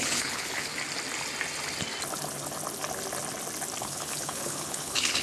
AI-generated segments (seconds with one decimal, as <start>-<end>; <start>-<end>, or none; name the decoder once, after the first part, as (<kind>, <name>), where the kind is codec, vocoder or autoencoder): 0.0-0.7 (codec, HILCodec); 3.8-5.2